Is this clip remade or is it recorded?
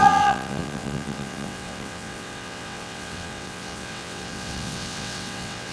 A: remade